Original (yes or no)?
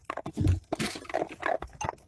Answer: yes